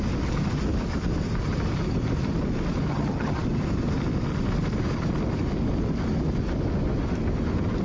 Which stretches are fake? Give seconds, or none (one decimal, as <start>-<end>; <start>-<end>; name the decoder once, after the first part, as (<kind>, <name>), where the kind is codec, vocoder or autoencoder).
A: 2.9-3.4 (vocoder, HiFi-GAN)